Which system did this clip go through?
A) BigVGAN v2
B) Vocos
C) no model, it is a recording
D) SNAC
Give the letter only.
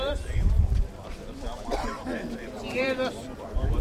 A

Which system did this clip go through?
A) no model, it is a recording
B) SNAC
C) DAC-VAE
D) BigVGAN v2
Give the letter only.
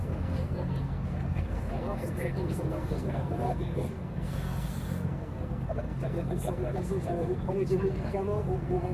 B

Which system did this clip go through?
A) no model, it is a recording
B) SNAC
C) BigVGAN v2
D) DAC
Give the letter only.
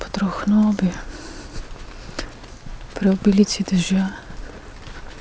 A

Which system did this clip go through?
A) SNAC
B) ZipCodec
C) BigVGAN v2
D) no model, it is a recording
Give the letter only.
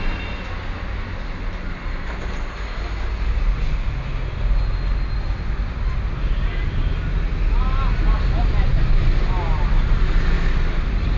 D